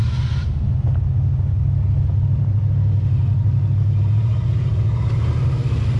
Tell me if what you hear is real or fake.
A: real